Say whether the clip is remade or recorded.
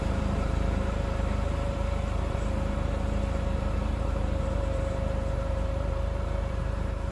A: remade